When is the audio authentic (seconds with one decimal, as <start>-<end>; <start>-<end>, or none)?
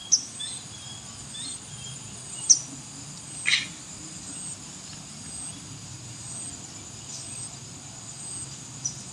0.0-9.1